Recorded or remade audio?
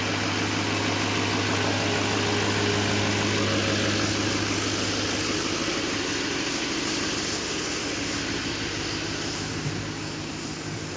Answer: recorded